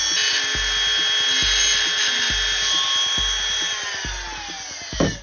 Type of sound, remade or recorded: recorded